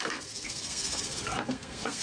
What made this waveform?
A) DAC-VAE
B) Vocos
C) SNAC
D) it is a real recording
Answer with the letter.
C